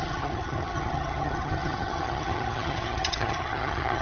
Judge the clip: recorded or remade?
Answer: remade